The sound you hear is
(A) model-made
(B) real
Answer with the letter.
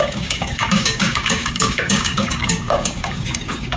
A